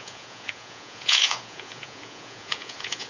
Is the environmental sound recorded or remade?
remade